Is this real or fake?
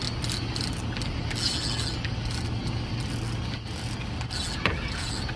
real